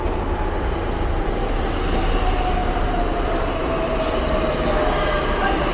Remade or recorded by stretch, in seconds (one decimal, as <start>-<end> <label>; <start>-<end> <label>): 0.0-5.7 recorded

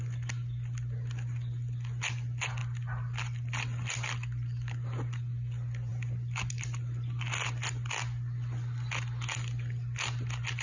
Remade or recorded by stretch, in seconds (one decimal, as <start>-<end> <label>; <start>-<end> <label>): 0.0-10.6 recorded

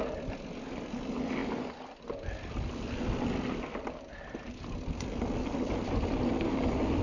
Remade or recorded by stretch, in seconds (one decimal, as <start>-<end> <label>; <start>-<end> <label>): 0.0-1.4 recorded; 1.4-4.5 remade; 4.5-7.0 recorded